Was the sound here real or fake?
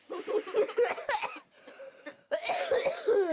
real